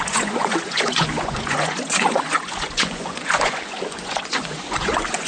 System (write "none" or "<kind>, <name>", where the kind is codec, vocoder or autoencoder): vocoder, Vocos